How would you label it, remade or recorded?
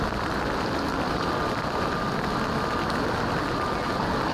recorded